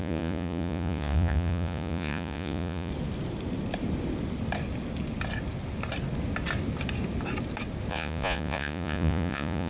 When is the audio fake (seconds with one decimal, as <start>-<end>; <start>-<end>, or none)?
0.0-2.9; 7.9-9.7